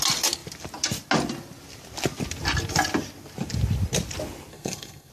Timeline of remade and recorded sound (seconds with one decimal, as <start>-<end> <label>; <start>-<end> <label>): 0.0-4.5 recorded; 4.5-5.1 remade